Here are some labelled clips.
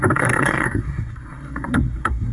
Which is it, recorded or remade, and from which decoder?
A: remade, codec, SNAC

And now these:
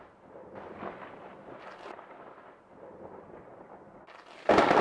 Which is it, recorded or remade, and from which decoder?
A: recorded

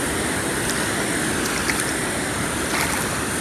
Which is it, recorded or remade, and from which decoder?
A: recorded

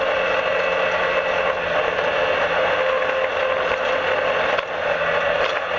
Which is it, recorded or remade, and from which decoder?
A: recorded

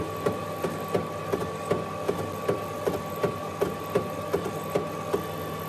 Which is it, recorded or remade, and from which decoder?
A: recorded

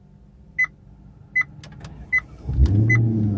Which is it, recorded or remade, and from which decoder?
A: recorded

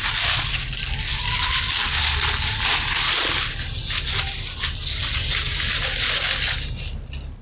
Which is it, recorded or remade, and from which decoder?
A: recorded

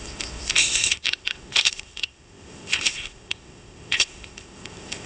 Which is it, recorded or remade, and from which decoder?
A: remade, codec, ZipCodec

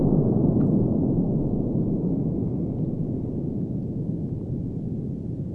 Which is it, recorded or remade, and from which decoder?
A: recorded